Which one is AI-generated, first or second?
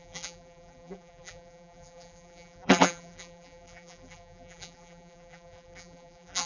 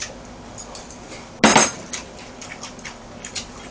first